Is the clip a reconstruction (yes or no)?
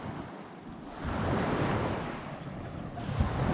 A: no